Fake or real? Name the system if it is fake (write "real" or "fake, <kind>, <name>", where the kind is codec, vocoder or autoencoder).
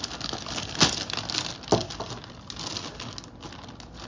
real